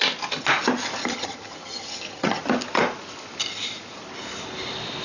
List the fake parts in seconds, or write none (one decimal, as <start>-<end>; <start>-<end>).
1.0-2.4